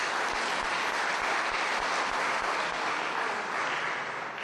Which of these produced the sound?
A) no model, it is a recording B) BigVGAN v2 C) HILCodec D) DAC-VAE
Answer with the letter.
A